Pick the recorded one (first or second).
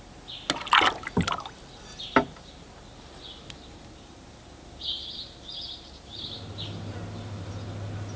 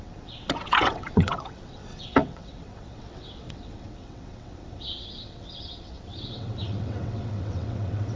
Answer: first